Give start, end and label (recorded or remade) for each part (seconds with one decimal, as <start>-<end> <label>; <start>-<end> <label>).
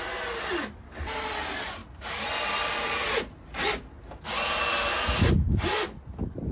0.0-6.5 recorded